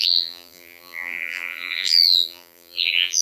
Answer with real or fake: fake